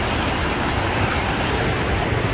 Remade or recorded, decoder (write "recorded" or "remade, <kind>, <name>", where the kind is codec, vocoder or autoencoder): recorded